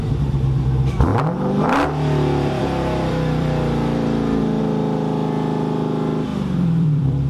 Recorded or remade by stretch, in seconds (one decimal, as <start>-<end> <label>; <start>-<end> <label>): 0.0-1.1 recorded; 1.1-4.6 remade; 4.6-6.3 recorded; 6.3-7.3 remade